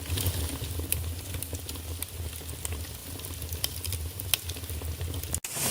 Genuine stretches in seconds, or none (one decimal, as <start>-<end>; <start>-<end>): 0.0-0.9; 1.5-3.0; 4.3-5.7